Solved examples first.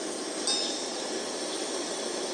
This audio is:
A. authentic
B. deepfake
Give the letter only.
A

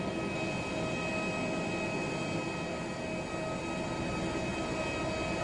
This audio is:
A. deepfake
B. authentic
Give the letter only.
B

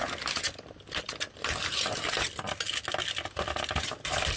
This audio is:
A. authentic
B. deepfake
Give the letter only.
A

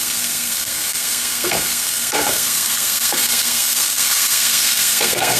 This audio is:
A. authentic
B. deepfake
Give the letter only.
B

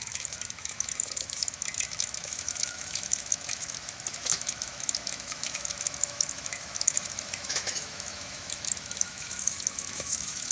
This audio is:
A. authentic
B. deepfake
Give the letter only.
B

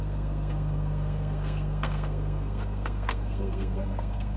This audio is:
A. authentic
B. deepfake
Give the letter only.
B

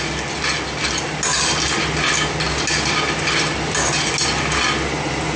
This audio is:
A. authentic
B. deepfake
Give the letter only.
A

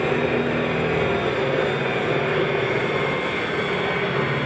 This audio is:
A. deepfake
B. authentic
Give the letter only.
B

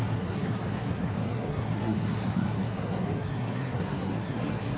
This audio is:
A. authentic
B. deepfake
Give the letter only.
B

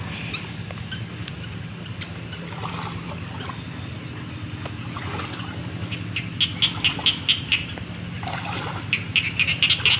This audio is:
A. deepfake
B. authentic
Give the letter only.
B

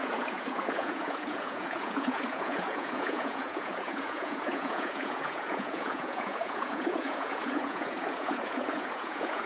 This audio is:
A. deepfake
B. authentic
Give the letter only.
A